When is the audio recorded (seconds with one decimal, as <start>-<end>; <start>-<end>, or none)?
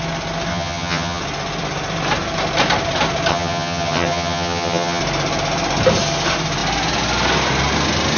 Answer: 0.0-0.5; 1.2-3.3; 5.0-8.2